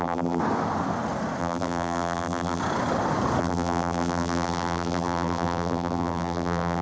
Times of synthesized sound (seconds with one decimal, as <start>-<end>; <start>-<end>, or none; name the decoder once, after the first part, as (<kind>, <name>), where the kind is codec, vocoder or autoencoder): 0.0-0.4 (vocoder, BigVGAN v2); 1.4-2.6; 3.4-6.8